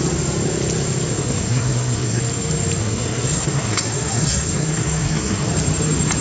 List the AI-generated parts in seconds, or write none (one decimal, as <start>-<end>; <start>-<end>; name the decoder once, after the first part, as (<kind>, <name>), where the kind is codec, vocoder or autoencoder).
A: 1.1-2.2 (codec, SNAC); 2.8-5.5